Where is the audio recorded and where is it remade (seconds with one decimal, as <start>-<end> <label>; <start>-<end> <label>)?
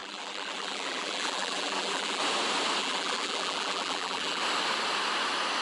0.0-2.2 remade; 2.2-2.8 recorded; 2.8-4.4 remade; 4.4-5.6 recorded